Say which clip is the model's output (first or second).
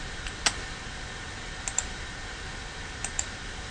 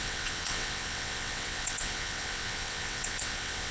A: second